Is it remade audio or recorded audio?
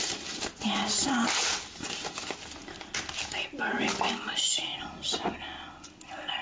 recorded